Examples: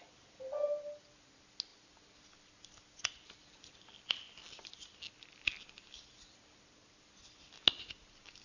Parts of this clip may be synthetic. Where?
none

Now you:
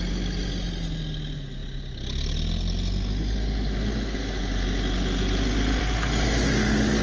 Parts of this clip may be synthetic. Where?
none

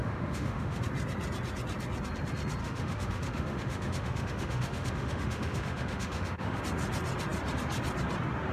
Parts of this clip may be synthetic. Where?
0.0-0.8 (autoencoder, DAC-VAE); 2.6-6.6

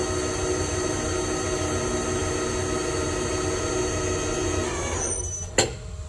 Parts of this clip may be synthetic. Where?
none

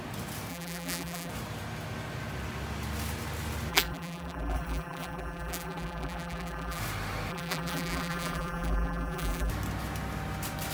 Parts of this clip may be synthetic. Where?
0.5-1.3 (vocoder, BigVGAN v2); 3.7-6.8; 7.3-9.5

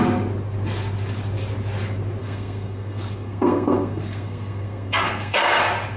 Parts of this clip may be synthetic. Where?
2.2-5.6 (codec, SNAC)

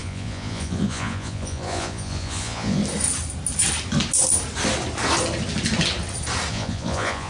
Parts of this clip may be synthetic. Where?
0.0-2.8 (vocoder, Vocos); 6.5-7.3